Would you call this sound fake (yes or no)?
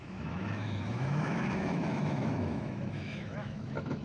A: yes